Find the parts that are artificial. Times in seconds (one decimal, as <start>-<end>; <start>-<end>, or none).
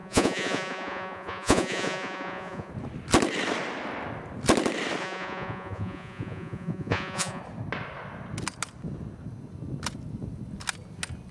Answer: 0.0-2.7; 5.0-7.4